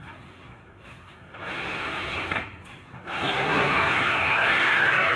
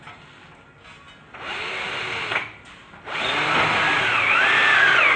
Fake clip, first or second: first